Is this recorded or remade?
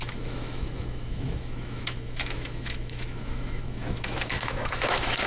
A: remade